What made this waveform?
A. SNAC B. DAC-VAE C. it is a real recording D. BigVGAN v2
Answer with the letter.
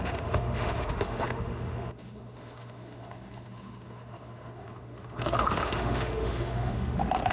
B